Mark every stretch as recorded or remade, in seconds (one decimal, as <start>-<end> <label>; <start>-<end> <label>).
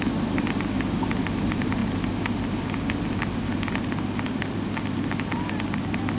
0.0-6.2 recorded